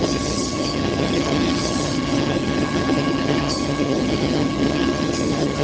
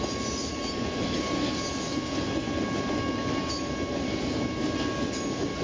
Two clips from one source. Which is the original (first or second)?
second